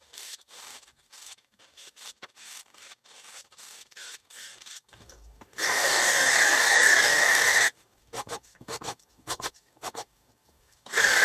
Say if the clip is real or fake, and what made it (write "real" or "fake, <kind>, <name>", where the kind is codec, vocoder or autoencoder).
fake, codec, DAC